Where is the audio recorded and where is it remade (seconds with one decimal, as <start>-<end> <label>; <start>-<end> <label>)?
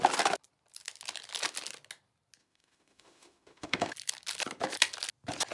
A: 0.0-2.4 recorded; 2.4-3.9 remade; 3.9-5.5 recorded